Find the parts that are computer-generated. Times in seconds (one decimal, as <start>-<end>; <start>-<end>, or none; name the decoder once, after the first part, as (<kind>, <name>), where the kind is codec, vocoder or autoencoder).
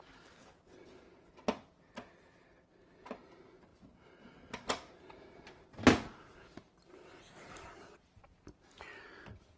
none